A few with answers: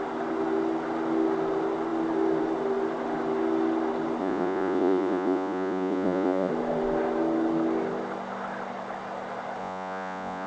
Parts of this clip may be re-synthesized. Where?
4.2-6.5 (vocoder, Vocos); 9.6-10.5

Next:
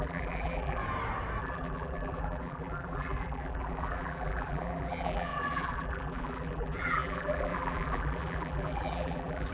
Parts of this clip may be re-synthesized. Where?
0.0-0.8 (vocoder, BigVGAN v2); 1.4-9.5

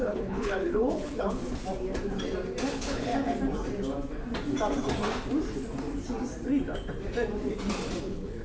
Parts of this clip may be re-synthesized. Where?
0.0-1.4 (codec, HILCodec); 2.7-3.1; 8.0-8.4

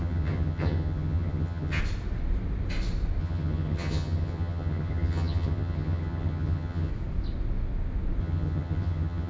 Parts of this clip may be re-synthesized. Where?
0.0-1.8 (vocoder, HiFi-GAN); 3.2-6.9; 8.2-9.3

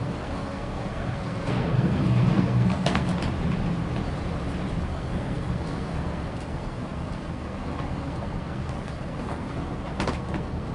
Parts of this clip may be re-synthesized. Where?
0.0-3.1 (codec, SNAC); 4.8-10.7

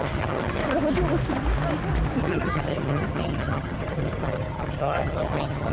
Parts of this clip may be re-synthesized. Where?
0.0-0.6 (vocoder, HiFi-GAN); 2.2-5.7